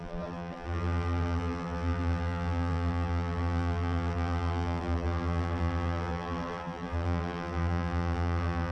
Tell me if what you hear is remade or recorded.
remade